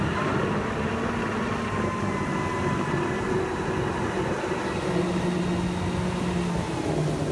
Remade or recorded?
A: recorded